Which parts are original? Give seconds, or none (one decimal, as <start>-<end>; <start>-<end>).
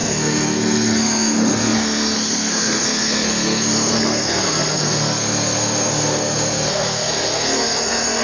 none